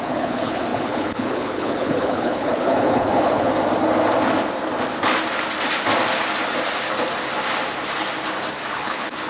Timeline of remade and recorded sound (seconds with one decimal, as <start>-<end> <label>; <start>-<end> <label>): 0.0-3.5 remade; 3.5-8.7 recorded; 8.7-9.3 remade